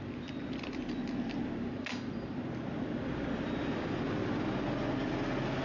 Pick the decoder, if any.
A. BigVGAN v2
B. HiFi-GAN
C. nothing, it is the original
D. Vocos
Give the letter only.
C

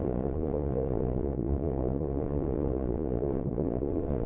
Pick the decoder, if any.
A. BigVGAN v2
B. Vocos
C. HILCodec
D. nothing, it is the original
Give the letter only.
B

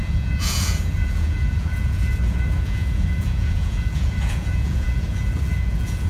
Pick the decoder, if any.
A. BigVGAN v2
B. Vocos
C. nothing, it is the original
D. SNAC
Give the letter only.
B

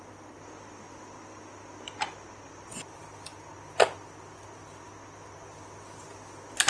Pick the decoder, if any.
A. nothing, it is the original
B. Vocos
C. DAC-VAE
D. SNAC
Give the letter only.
A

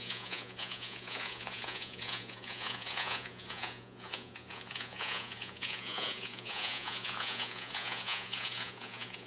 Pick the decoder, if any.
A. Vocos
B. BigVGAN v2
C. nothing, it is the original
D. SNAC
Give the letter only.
A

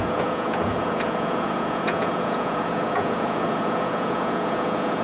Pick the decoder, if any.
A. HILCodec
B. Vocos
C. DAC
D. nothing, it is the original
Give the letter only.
B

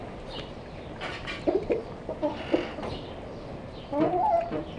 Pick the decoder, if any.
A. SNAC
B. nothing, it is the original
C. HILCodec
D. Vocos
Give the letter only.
B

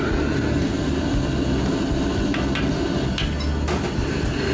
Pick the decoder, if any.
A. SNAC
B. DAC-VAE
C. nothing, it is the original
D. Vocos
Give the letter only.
C